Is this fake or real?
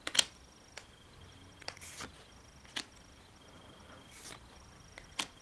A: real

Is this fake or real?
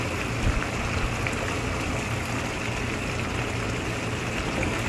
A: real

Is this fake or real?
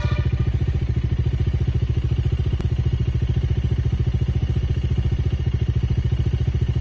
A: real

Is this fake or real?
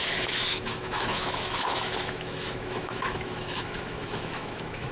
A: fake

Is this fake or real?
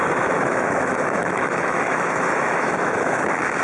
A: fake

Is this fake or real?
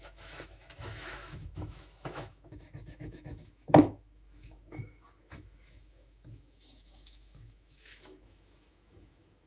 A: fake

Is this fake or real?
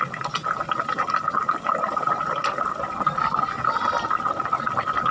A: real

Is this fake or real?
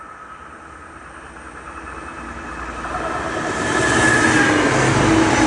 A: real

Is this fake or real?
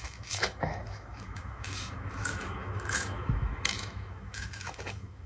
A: fake